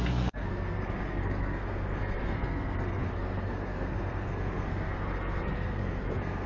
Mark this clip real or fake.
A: fake